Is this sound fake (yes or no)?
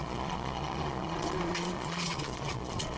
yes